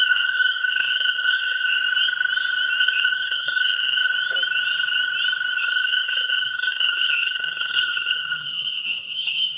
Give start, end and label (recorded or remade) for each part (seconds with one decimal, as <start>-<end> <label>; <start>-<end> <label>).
0.0-1.7 remade; 1.7-2.8 recorded; 2.8-4.1 remade; 4.1-5.6 recorded; 5.6-9.6 remade